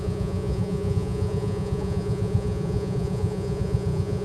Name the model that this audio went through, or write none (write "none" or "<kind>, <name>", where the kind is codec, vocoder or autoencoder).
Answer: vocoder, Vocos